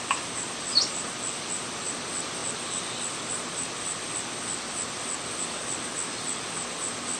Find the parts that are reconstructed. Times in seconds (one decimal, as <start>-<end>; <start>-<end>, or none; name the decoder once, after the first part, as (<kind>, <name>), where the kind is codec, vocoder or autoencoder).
none